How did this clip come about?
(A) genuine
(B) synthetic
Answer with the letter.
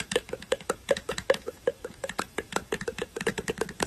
B